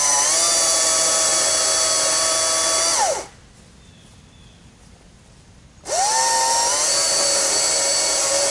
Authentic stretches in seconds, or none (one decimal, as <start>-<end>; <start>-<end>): 0.0-8.5